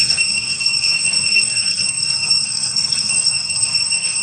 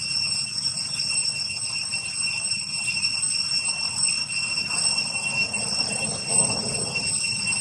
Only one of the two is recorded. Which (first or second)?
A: second